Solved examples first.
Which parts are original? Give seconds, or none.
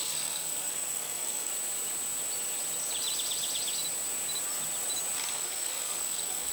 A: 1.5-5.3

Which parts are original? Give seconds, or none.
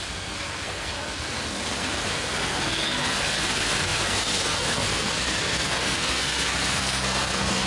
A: none